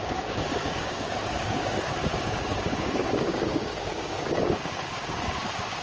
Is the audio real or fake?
fake